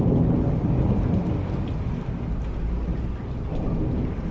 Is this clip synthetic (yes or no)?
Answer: no